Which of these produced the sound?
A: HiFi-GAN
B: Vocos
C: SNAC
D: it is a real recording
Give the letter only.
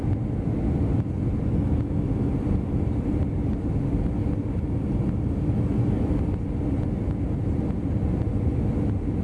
D